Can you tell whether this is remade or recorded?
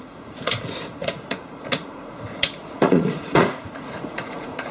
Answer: remade